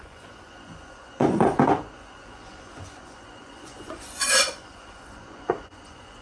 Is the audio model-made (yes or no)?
yes